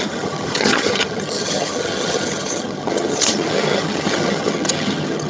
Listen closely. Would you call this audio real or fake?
fake